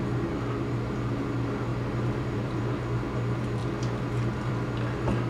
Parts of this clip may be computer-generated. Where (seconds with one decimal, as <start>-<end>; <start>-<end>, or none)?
1.7-2.6